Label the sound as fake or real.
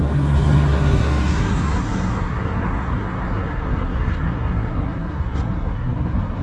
fake